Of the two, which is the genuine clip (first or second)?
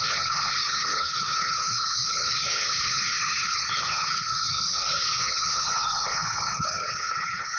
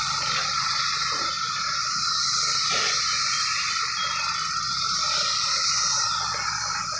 second